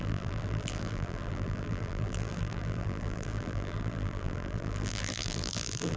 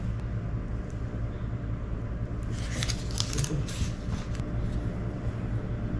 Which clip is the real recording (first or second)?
second